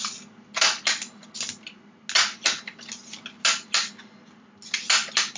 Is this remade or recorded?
recorded